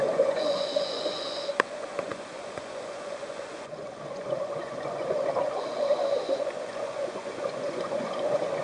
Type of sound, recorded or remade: remade